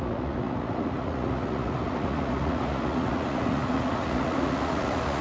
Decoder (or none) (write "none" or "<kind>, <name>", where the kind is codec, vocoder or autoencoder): vocoder, Vocos